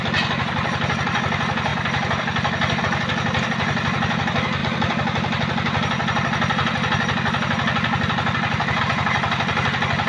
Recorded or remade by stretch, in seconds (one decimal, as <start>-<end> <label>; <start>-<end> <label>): 0.0-10.1 recorded